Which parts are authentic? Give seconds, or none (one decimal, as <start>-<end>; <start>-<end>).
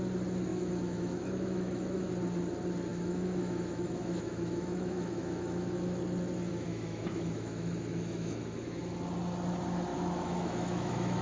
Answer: 0.0-0.5; 2.1-2.9; 6.0-6.5; 8.8-9.9